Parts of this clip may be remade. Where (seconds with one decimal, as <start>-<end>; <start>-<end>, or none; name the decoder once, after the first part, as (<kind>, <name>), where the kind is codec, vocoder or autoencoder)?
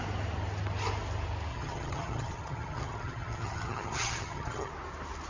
1.5-4.7 (vocoder, HiFi-GAN)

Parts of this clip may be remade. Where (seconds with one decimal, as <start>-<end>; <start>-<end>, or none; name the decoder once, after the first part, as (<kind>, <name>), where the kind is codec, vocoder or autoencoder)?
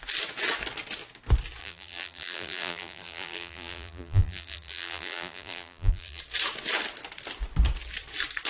1.6-6.2 (vocoder, BigVGAN v2)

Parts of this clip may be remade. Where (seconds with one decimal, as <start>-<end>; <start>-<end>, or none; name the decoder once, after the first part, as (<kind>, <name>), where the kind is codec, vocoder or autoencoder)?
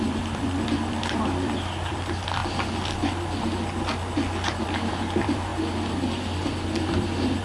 0.0-2.4 (vocoder, BigVGAN v2); 4.6-5.5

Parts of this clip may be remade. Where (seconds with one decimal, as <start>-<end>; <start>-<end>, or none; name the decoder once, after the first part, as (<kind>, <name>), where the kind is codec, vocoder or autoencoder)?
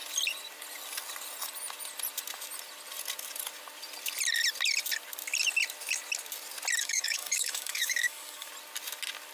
6.8-8.5 (codec, DAC)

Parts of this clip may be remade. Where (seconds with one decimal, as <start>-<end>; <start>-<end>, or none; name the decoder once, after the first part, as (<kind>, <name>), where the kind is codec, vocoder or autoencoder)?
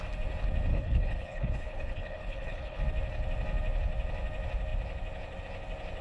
0.7-2.8 (codec, HILCodec)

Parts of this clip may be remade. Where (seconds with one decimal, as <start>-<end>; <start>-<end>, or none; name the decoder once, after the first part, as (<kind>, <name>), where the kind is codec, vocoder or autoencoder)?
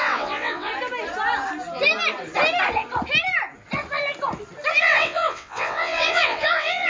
0.0-0.7 (vocoder, WaveNeXt); 4.8-6.9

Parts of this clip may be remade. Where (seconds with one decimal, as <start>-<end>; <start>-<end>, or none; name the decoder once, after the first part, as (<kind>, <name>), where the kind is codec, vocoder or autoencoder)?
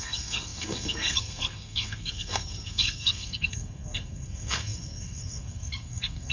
0.0-6.3 (codec, SNAC)